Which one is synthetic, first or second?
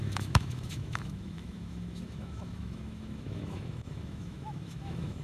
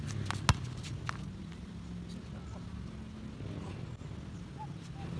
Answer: first